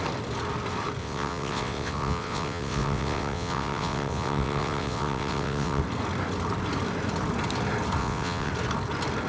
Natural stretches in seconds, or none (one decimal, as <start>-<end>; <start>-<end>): 0.0-1.0; 5.8-8.0; 8.5-9.3